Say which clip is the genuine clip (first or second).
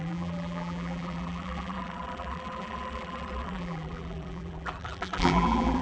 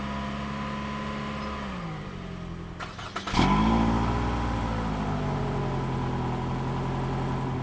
second